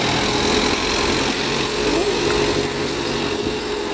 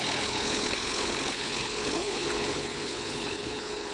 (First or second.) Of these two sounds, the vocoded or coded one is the second